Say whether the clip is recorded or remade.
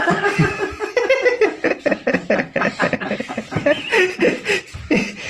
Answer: remade